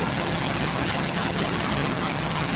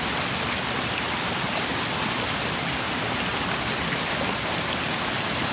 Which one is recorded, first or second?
second